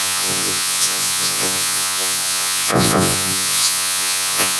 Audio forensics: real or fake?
fake